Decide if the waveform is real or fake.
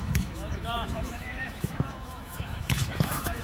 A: fake